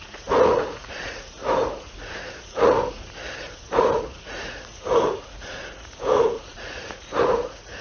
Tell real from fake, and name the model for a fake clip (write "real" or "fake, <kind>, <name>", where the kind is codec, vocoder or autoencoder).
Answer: fake, vocoder, Vocos